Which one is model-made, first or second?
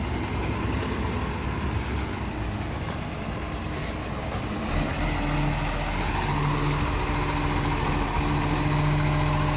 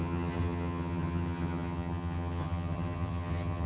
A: second